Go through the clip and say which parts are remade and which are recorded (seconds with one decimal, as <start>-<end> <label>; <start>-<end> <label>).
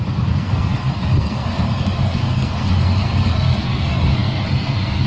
0.0-5.1 remade